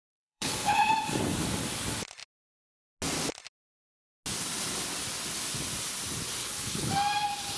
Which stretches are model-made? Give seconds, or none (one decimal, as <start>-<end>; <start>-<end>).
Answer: 0.0-0.9; 6.4-6.9